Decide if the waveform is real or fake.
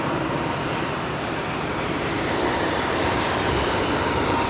fake